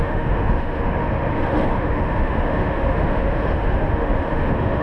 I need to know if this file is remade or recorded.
remade